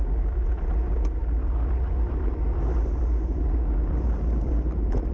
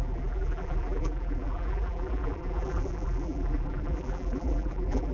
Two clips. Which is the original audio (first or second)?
first